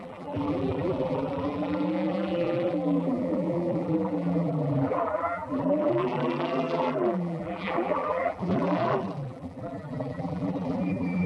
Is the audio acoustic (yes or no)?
no